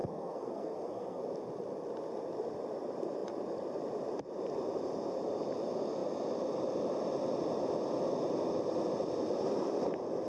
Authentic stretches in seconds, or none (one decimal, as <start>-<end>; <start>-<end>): 1.2-10.3